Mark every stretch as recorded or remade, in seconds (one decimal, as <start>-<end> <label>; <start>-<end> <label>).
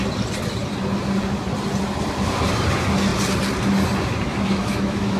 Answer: 0.0-4.3 recorded; 4.3-5.2 remade